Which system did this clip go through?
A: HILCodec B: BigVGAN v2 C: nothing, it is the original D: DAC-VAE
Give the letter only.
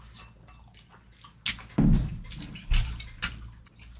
C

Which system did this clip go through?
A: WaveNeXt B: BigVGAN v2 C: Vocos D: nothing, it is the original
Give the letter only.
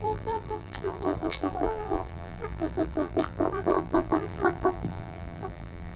B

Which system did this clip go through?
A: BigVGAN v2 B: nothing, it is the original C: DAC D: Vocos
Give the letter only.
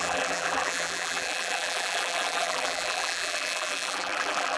A